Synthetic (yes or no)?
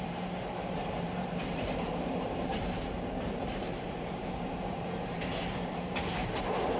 yes